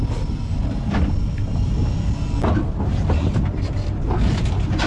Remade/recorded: recorded